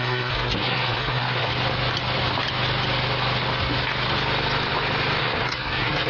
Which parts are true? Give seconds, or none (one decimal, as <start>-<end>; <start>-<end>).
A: 1.5-5.2